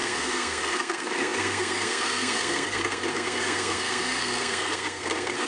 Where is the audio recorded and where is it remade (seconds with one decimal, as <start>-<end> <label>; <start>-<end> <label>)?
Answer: 0.0-5.5 remade